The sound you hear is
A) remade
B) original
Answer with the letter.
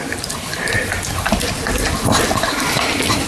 B